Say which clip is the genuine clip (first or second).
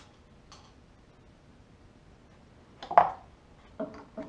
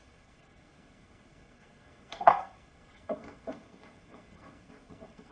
first